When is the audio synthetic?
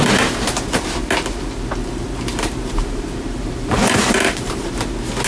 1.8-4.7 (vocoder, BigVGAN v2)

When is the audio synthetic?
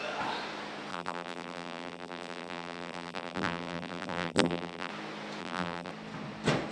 0.9-4.9 (vocoder, BigVGAN v2); 5.4-5.9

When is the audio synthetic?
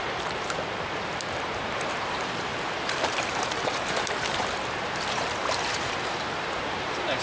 0.0-7.2 (vocoder, BigVGAN v2)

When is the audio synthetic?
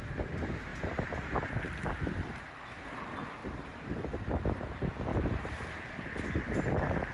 3.4-4.0 (vocoder, BigVGAN v2); 5.1-6.0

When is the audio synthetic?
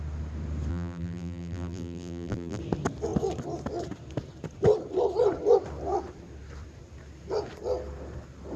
0.7-2.6 (vocoder, BigVGAN v2)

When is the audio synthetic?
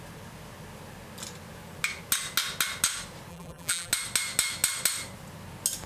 3.3-3.9 (vocoder, BigVGAN v2)